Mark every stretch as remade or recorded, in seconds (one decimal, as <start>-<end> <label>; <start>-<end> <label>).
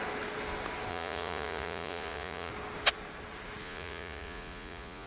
0.0-0.9 recorded; 0.9-2.5 remade; 2.5-3.6 recorded; 3.6-5.1 remade